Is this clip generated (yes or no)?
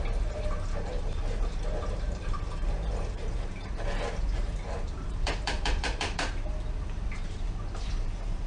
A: yes